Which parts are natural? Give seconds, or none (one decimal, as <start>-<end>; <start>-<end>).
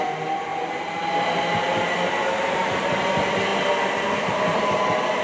0.0-5.2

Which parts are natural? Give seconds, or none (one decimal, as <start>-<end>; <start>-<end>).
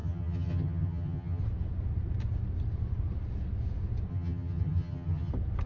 1.4-4.1; 5.3-5.7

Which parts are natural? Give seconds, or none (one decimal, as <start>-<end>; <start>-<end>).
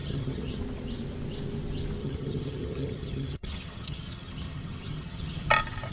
0.6-2.0; 5.5-5.9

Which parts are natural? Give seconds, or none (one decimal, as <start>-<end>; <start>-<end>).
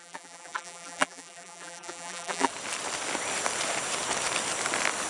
2.5-5.1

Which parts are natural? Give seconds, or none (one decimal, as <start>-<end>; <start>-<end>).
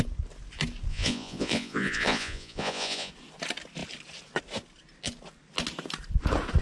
0.0-0.9; 3.1-6.6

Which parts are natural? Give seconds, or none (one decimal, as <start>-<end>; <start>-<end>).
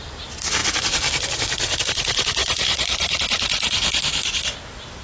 0.0-2.4; 3.2-5.0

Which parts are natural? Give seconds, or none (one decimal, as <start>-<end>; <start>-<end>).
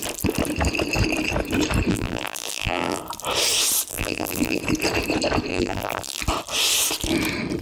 0.0-1.9; 3.0-3.9; 4.6-5.5; 6.2-7.6